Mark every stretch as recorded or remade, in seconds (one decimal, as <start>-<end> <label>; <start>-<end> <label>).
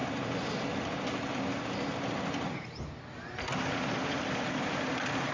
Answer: 0.0-5.3 recorded